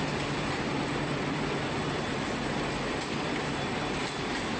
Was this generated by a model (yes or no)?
no